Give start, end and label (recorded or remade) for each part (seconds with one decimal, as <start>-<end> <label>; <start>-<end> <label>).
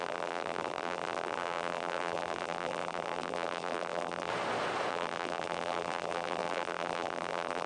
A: 0.0-4.3 remade; 4.3-4.9 recorded; 4.9-7.7 remade